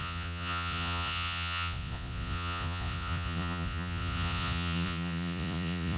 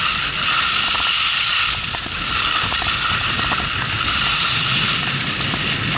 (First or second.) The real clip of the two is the second